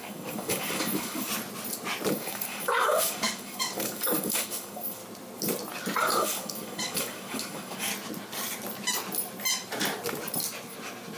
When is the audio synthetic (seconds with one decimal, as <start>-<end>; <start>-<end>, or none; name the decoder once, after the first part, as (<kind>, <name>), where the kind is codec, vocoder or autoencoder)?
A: 0.0-1.3 (codec, DAC); 2.1-5.0; 6.0-7.9